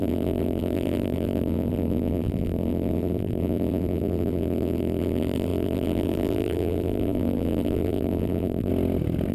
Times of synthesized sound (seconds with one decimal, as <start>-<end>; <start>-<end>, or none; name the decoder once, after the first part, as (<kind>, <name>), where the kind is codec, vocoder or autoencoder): 0.0-8.7 (vocoder, BigVGAN v2)